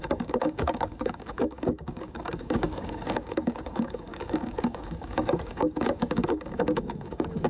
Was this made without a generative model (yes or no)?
no